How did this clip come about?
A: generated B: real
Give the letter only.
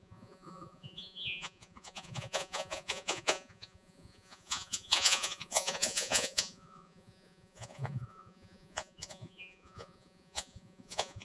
A